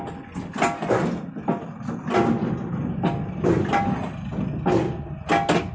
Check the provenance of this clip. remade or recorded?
recorded